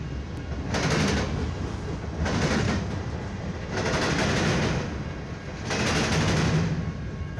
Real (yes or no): yes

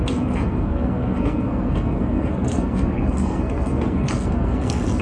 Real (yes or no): no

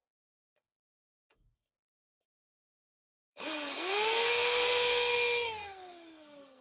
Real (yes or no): no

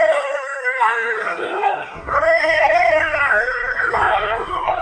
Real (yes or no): no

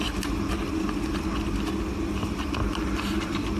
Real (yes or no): yes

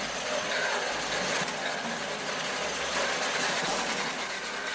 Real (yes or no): yes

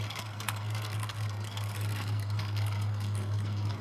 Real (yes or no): no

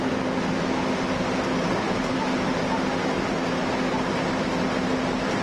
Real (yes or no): yes